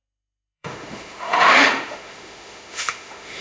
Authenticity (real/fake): fake